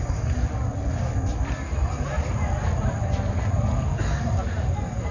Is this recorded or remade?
recorded